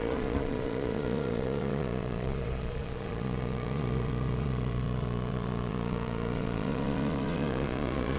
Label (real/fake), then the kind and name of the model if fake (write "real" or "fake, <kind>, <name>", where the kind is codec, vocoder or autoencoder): fake, vocoder, Vocos